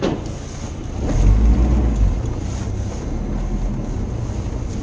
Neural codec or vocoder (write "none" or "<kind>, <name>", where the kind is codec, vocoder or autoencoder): none